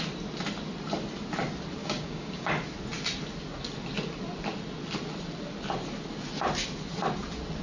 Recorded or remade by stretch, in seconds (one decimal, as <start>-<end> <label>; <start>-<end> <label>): 0.0-1.8 recorded; 1.8-2.5 remade; 2.5-7.6 recorded